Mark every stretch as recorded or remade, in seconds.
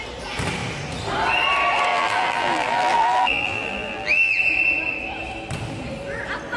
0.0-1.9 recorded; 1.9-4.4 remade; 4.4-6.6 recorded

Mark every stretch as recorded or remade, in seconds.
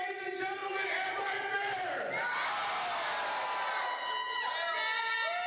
0.0-0.6 recorded; 0.6-1.5 remade; 1.5-5.5 recorded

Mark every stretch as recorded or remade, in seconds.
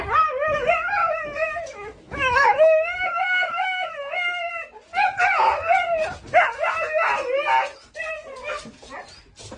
0.0-1.0 recorded; 1.0-4.4 remade; 4.4-8.1 recorded; 8.1-8.8 remade; 8.8-9.6 recorded